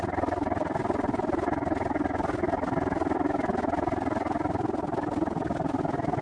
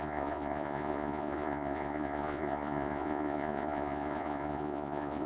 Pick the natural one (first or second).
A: first